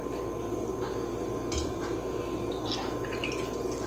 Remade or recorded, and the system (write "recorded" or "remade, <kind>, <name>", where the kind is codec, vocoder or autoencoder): recorded